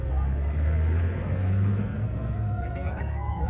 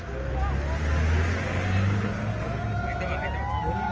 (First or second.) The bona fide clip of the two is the second